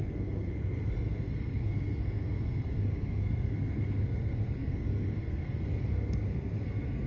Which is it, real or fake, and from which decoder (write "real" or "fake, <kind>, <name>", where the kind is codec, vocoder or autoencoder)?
fake, codec, SNAC